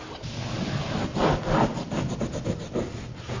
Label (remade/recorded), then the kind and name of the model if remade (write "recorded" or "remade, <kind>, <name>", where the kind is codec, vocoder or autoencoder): recorded